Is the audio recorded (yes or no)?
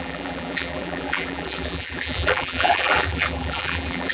no